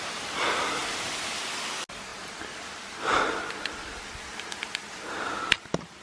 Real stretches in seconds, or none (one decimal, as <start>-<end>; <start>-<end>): 0.0-0.8; 1.4-2.1; 4.4-6.0